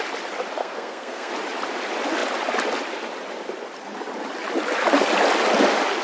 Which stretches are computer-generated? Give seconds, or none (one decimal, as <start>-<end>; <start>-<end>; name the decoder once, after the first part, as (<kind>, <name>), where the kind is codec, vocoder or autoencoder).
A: 0.6-1.3 (codec, SNAC)